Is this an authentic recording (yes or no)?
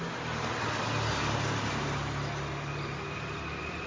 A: yes